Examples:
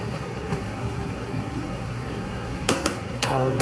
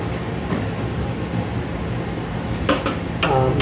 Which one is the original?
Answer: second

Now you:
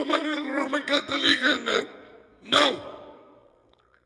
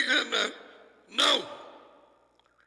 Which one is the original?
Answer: second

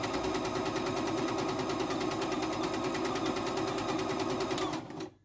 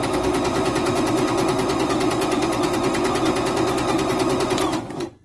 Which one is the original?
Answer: first